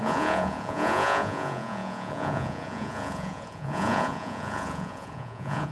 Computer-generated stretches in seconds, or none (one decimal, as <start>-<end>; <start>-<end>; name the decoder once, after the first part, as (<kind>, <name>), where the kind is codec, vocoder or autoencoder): 0.0-5.7 (vocoder, Vocos)